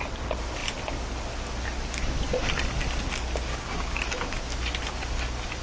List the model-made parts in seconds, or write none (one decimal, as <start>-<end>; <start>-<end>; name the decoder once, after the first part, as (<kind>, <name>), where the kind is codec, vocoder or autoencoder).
3.5-4.0 (codec, DAC)

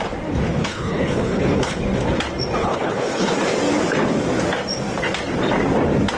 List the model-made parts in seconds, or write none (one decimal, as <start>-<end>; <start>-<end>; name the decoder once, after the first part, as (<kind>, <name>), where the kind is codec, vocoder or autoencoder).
0.6-1.8 (codec, HILCodec); 2.6-3.3